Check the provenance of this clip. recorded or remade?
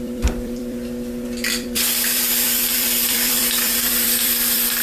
remade